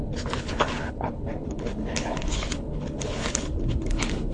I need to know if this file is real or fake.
fake